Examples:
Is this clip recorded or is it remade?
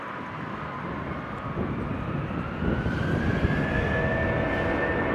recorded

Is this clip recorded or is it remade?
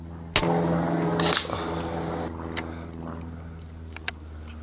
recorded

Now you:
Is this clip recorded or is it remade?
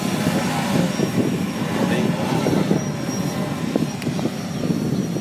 recorded